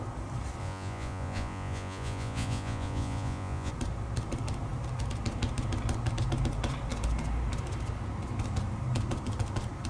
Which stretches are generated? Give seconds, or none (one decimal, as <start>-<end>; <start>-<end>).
0.6-3.7